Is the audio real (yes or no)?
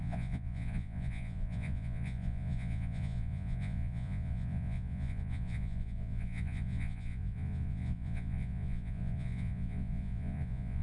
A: no